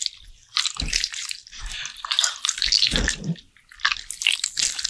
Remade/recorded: recorded